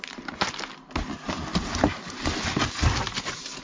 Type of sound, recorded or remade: recorded